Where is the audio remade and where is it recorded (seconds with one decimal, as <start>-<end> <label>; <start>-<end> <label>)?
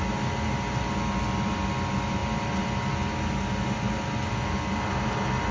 0.0-5.5 recorded